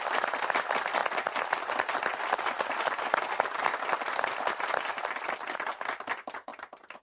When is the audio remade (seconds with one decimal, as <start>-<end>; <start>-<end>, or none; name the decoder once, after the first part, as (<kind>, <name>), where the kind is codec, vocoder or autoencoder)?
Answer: none

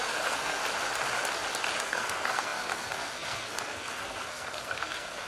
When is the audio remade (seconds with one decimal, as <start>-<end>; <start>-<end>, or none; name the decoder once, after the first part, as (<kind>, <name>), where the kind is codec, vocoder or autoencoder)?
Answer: 0.0-0.6 (codec, SNAC); 1.8-5.3

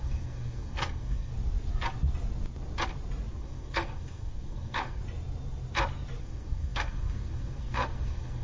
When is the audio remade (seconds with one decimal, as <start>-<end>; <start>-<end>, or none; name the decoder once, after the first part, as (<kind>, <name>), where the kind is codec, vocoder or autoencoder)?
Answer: 0.0-1.3 (codec, SNAC); 3.3-5.0; 6.2-8.4

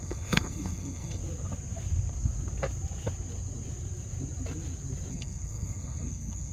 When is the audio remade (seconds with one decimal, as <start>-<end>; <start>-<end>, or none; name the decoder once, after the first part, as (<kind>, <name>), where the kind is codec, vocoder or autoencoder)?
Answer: 0.0-1.2 (codec, SNAC); 5.1-6.5